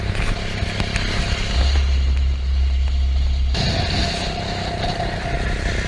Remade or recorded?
recorded